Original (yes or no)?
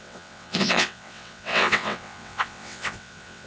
no